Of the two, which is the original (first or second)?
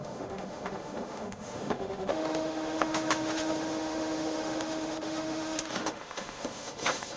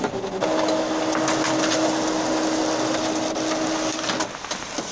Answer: second